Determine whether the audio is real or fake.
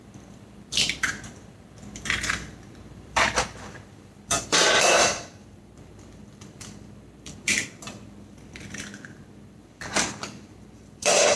fake